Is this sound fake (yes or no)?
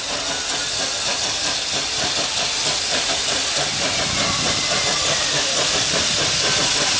no